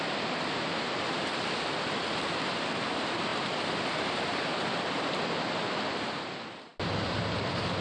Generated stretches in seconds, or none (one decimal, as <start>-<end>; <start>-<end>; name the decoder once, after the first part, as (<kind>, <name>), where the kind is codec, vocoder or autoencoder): 0.0-6.7 (vocoder, BigVGAN v2)